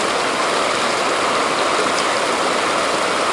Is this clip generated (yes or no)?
no